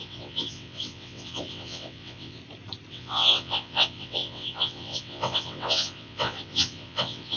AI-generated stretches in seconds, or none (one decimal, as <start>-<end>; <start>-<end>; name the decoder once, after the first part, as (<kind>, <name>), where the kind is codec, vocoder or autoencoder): 0.0-2.4 (vocoder, WaveNeXt); 2.9-7.4